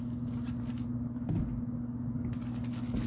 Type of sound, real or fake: real